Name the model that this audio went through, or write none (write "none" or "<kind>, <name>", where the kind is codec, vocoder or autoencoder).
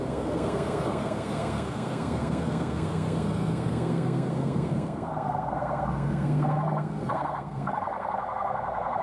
codec, SNAC